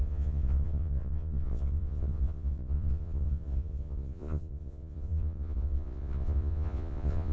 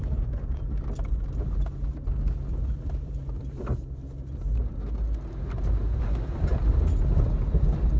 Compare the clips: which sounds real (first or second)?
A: second